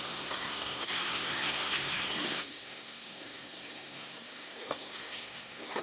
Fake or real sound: fake